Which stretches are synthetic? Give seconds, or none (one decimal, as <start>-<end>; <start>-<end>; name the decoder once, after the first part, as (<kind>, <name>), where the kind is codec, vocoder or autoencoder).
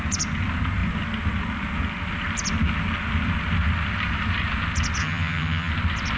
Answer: 5.0-5.7 (vocoder, HiFi-GAN)